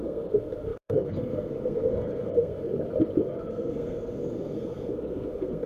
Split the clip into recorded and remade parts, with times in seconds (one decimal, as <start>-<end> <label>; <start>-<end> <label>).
0.0-2.7 remade; 2.7-3.2 recorded; 3.2-5.7 remade